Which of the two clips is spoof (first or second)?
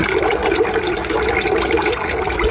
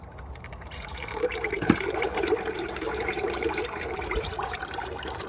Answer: second